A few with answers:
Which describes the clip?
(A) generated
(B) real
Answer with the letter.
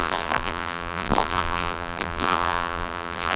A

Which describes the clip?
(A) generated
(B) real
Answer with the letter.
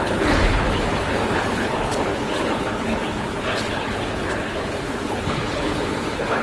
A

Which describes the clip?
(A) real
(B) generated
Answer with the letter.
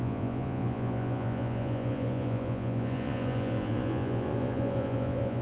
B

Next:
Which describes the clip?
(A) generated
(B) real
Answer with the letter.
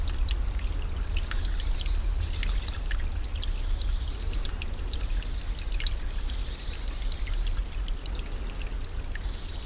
B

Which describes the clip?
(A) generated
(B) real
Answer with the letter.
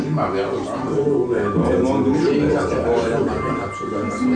B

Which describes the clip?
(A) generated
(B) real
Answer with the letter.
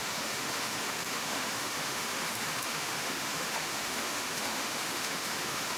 A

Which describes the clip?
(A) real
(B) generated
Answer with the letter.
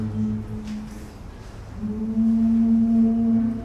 A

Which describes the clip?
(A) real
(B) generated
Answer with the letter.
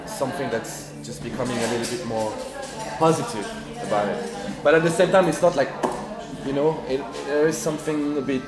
A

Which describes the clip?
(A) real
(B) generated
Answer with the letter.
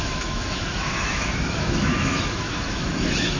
B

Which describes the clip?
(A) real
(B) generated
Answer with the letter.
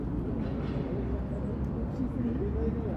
A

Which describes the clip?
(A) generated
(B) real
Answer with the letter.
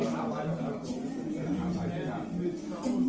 A